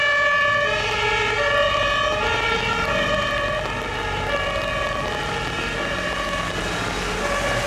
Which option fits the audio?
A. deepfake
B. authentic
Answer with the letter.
B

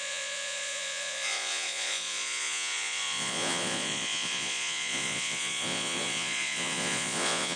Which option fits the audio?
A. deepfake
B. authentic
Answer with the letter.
A